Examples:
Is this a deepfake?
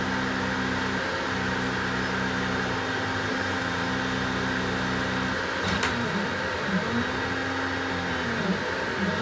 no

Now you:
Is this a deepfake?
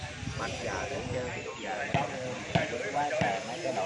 no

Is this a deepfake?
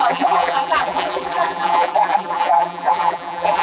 yes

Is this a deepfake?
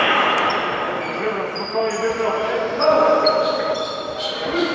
yes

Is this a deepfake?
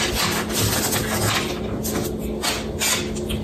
no